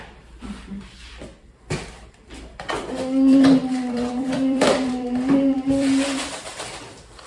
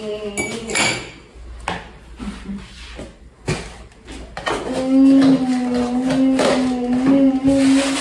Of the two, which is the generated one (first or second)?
first